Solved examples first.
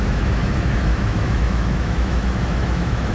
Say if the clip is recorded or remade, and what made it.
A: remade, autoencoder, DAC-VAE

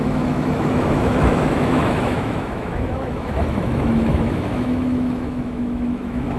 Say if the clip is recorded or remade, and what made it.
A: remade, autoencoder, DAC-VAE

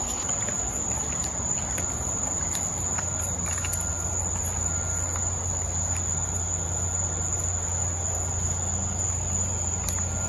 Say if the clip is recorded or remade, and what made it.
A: recorded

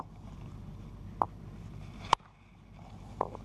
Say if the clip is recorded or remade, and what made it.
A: recorded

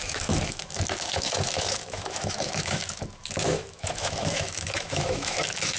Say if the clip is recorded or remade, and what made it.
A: remade, autoencoder, DAC-VAE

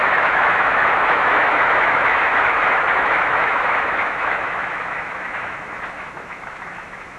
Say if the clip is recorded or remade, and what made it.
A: remade, autoencoder, DAC-VAE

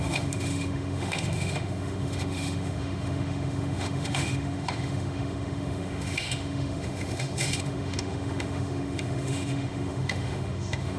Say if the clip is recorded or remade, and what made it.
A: remade, autoencoder, DAC-VAE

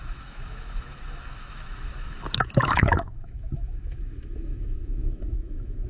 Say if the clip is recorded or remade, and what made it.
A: remade, autoencoder, DAC-VAE